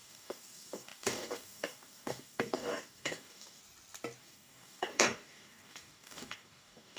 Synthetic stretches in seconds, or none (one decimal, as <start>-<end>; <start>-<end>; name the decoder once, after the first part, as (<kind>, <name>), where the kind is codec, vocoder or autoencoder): 0.0-3.6 (codec, DAC); 4.2-7.0